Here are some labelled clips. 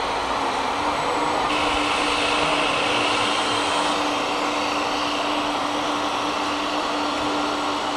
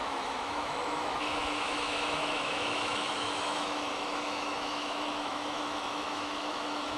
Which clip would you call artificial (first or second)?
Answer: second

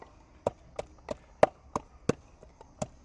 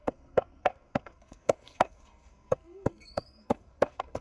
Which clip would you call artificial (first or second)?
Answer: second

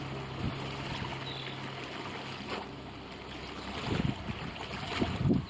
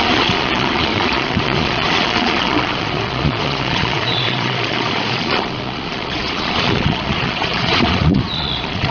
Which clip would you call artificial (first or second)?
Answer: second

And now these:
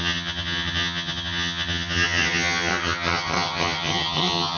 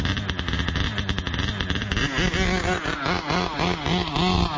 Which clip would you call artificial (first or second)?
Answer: first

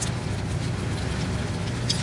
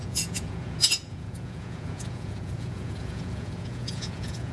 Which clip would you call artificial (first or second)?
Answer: second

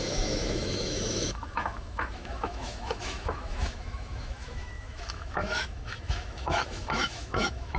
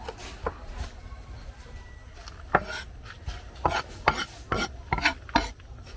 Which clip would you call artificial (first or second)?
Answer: first